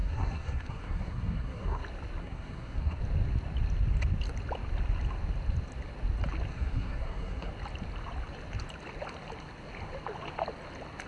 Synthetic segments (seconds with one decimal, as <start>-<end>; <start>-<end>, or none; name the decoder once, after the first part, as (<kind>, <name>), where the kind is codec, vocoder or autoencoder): 0.0-1.8 (codec, SNAC); 2.2-3.0; 6.5-7.5